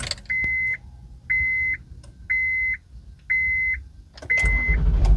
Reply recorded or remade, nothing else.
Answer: recorded